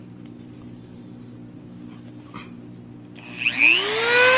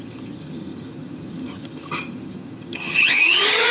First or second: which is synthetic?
second